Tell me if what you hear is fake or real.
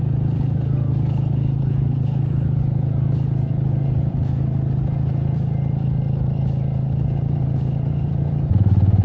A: fake